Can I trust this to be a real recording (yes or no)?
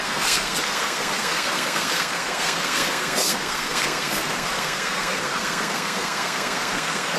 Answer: no